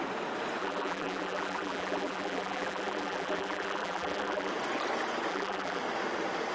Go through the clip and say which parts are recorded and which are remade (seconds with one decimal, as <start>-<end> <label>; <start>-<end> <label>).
0.0-0.6 recorded; 0.6-4.5 remade; 4.5-5.3 recorded; 5.3-5.8 remade; 5.8-6.5 recorded